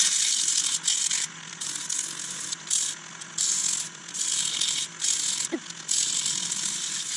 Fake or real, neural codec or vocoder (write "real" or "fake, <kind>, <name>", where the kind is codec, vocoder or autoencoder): real